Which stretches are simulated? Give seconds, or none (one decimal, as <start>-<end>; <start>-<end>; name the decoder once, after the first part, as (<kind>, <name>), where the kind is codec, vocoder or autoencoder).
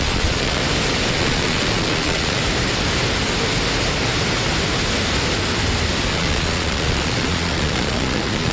0.0-0.6 (vocoder, Vocos); 1.1-2.4; 6.1-8.5